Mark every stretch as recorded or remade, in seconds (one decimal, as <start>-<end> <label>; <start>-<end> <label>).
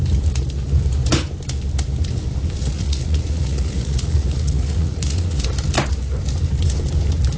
0.0-2.6 recorded; 2.6-5.4 remade; 5.4-7.4 recorded